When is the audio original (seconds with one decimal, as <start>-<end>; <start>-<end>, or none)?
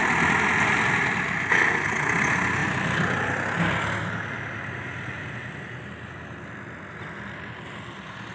0.0-8.3